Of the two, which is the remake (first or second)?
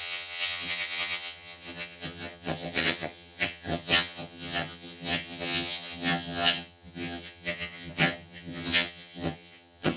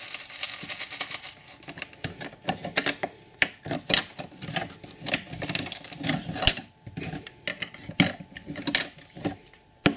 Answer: first